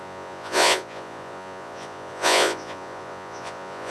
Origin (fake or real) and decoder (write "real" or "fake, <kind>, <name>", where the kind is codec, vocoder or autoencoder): fake, vocoder, Vocos